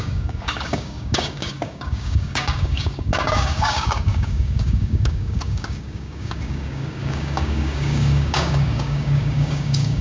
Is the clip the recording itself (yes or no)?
no